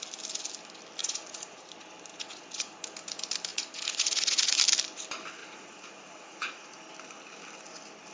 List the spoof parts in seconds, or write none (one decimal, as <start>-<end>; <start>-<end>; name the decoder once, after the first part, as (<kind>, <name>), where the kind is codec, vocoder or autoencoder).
1.0-1.6 (vocoder, Vocos); 2.1-2.8; 3.5-4.6; 5.4-6.8